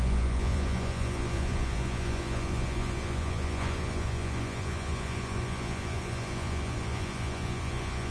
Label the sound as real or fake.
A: fake